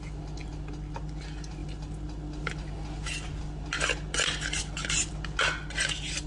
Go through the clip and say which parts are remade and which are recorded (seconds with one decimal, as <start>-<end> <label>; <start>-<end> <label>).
0.0-6.3 recorded